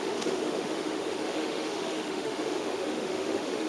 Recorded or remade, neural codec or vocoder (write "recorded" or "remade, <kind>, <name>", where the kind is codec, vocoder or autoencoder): remade, autoencoder, DAC-VAE